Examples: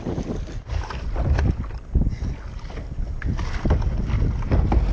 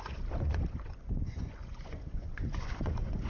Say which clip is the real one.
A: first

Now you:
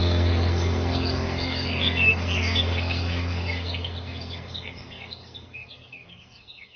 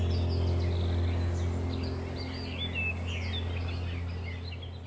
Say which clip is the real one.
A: second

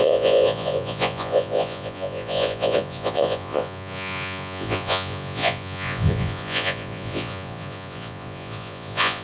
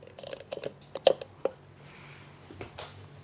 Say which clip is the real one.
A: second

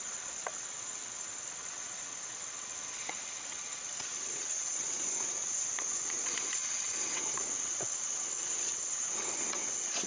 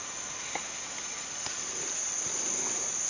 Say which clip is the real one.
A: second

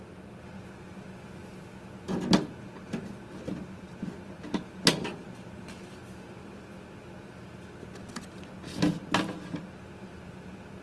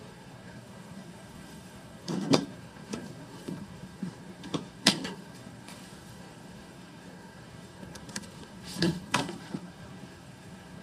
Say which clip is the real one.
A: first